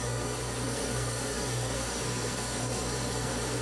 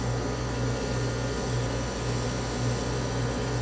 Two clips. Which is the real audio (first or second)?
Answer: second